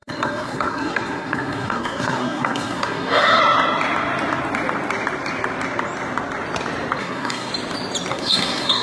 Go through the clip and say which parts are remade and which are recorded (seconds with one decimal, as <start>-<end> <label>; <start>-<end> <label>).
0.0-3.4 remade; 3.4-7.0 recorded; 7.0-7.5 remade; 7.5-8.1 recorded; 8.1-8.8 remade

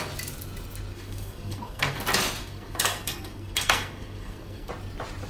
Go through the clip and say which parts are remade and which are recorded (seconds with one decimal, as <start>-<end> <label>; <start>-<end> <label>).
0.0-0.9 recorded; 0.9-2.0 remade; 2.0-2.4 recorded; 2.4-4.7 remade; 4.7-5.3 recorded

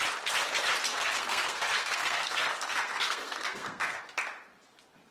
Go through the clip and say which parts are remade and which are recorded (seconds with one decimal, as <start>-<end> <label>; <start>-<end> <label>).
0.0-0.9 recorded; 0.9-4.0 remade; 4.0-5.1 recorded

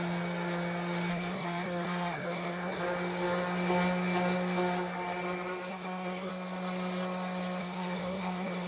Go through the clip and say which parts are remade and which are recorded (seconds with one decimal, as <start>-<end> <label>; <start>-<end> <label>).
0.0-1.1 recorded; 1.1-2.8 remade; 2.8-5.7 recorded; 5.7-6.3 remade; 6.3-7.6 recorded; 7.6-8.7 remade

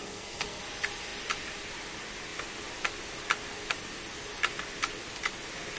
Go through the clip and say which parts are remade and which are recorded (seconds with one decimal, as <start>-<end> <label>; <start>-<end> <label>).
0.0-0.6 remade; 0.6-5.8 recorded

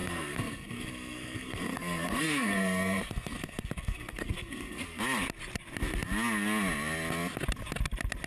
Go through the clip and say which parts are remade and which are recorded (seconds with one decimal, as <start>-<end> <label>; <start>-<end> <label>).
0.0-5.0 remade; 5.0-8.3 recorded